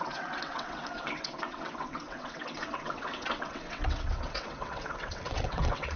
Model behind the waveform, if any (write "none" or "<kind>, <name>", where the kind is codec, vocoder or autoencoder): vocoder, WaveNeXt